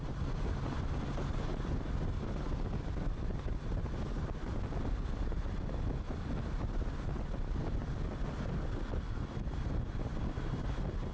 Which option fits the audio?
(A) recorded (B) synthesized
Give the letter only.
A